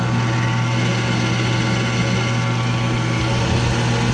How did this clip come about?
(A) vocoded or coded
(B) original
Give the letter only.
B